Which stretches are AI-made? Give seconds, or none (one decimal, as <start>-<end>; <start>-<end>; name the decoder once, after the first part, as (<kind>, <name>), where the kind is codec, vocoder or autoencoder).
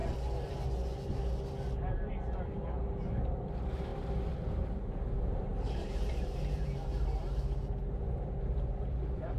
3.3-9.4 (vocoder, BigVGAN v2)